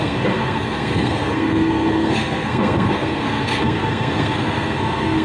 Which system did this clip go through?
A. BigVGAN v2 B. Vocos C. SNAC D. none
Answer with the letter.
C